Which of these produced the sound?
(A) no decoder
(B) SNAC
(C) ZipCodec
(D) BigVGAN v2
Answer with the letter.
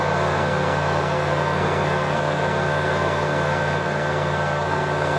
B